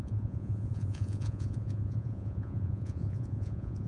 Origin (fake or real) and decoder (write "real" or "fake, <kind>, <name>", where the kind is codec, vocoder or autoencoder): fake, vocoder, Vocos